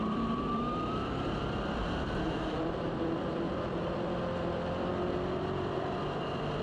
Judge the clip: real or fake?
fake